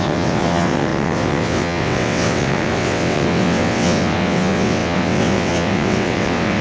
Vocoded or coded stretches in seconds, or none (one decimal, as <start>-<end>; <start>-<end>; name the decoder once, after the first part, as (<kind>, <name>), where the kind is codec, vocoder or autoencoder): 0.0-6.6 (vocoder, WaveNeXt)